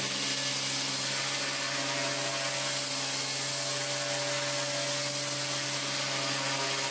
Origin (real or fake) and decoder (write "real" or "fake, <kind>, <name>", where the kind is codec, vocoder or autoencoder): real